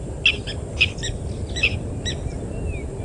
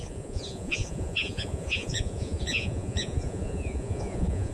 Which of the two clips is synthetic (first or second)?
second